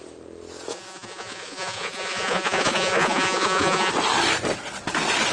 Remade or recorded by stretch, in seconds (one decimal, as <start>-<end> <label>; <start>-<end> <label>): 0.0-0.7 recorded; 0.7-3.9 remade; 3.9-5.3 recorded